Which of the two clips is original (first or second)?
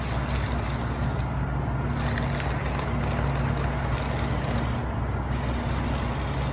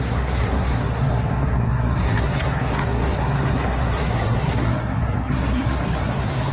first